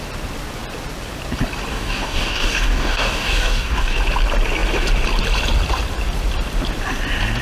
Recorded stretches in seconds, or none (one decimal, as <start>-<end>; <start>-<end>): 0.0-1.7; 4.0-7.4